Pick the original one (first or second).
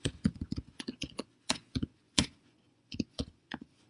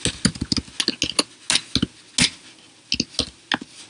second